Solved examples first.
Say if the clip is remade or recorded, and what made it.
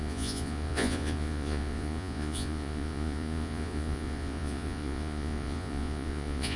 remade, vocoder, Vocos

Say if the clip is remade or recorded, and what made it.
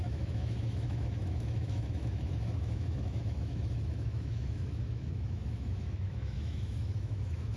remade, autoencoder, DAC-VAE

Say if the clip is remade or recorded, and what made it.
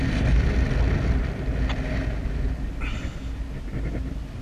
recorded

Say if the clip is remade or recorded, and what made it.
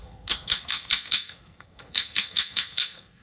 remade, codec, SNAC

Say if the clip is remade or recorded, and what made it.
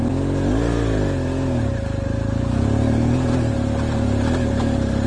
recorded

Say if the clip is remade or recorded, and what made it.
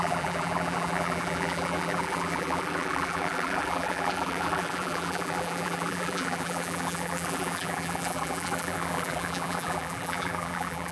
remade, vocoder, BigVGAN v2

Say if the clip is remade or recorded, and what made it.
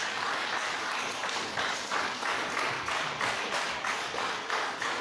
remade, codec, DAC